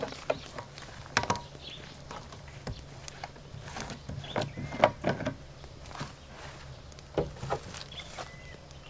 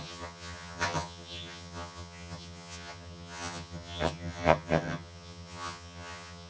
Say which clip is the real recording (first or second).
first